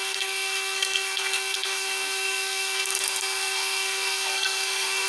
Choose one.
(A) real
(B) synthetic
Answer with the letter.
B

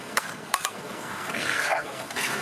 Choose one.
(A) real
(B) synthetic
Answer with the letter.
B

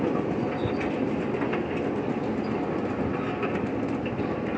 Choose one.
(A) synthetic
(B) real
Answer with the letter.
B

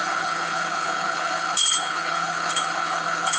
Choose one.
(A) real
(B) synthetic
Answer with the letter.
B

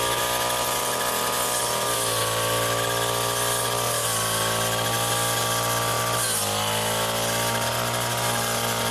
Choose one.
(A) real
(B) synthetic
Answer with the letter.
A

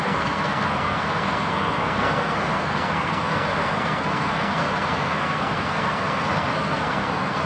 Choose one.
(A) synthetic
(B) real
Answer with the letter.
A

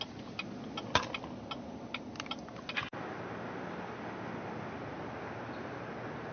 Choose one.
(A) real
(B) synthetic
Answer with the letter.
A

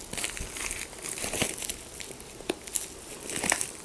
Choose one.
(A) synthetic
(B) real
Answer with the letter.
B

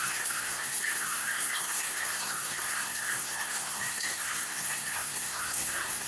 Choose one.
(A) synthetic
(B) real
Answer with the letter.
A